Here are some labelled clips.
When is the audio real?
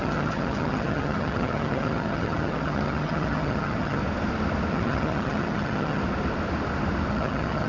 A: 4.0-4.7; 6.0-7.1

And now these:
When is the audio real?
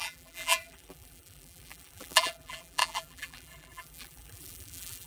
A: none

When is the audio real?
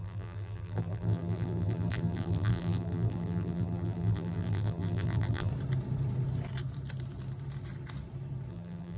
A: 5.5-8.5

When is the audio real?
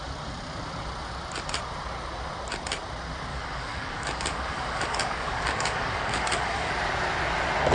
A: 0.0-3.3; 6.7-7.7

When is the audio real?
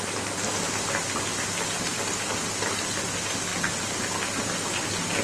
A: 0.0-5.2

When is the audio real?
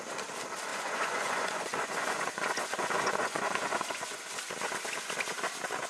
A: 0.0-0.7; 4.2-5.9